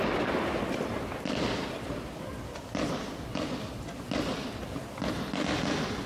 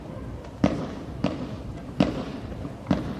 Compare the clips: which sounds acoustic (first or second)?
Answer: first